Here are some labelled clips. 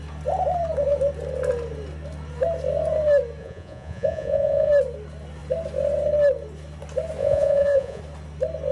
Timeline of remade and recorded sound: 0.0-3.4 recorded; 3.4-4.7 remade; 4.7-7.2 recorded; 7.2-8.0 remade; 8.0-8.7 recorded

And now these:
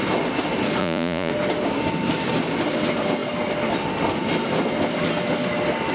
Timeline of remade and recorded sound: 0.0-0.8 recorded; 0.8-1.3 remade; 1.3-5.9 recorded

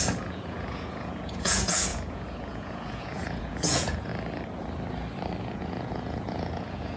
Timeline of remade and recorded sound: 0.0-4.1 remade; 4.1-5.4 recorded; 5.4-7.0 remade

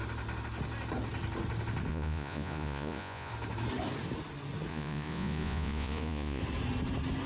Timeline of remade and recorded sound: 0.0-1.9 recorded; 1.9-3.3 remade; 3.3-4.7 recorded; 4.7-6.4 remade; 6.4-7.3 recorded

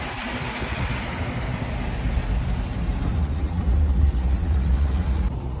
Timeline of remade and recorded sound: 0.0-3.1 recorded; 3.1-5.6 remade